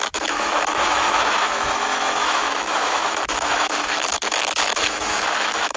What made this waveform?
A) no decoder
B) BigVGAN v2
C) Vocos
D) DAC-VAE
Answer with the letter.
D